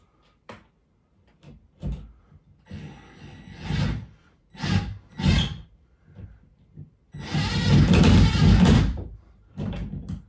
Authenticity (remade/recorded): recorded